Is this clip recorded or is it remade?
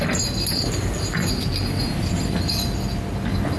recorded